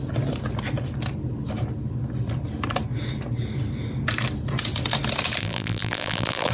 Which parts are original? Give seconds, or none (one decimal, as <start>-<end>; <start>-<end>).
0.0-5.4